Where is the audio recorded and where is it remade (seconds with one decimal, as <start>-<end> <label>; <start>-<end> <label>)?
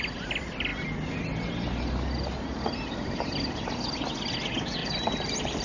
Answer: 0.0-4.8 recorded; 4.8-5.6 remade